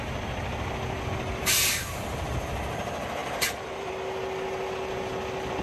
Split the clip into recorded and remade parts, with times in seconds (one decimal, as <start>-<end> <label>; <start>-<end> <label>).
0.0-3.2 recorded; 3.2-3.9 remade; 3.9-5.6 recorded